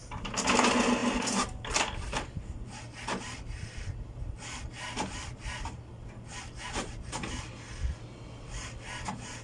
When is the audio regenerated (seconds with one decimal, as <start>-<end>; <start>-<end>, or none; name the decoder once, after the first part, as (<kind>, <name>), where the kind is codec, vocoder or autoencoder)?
none